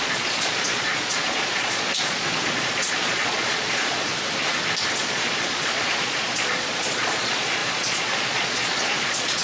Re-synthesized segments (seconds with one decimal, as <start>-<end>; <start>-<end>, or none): 0.0-4.1; 5.0-9.4